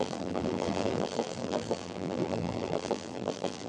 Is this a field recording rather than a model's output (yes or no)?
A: no